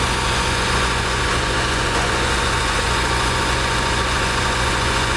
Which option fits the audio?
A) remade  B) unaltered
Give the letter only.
A